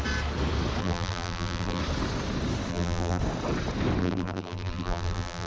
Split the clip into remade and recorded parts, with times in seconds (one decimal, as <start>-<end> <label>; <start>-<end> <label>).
0.0-0.8 recorded; 0.8-1.8 remade; 1.8-2.7 recorded; 2.7-3.2 remade; 3.2-4.0 recorded; 4.0-5.5 remade